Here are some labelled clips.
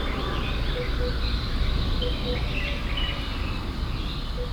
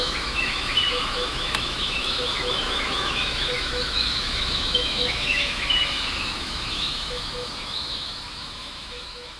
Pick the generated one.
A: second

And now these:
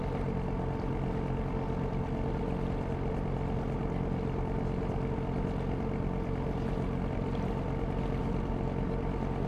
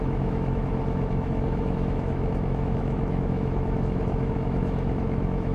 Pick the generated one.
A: second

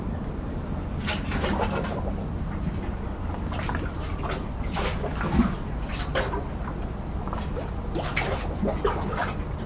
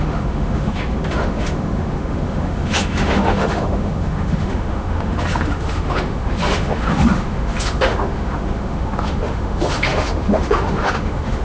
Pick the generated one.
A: second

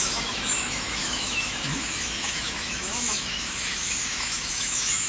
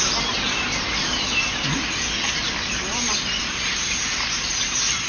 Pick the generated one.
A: first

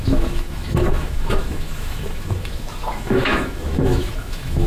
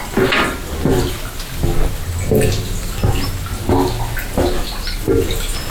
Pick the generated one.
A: first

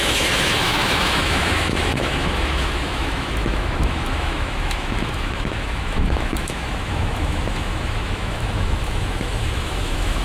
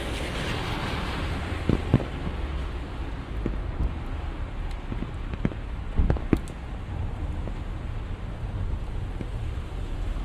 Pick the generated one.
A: first